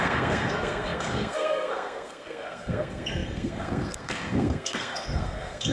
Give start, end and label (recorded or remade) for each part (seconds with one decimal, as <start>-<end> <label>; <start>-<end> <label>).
0.0-5.7 remade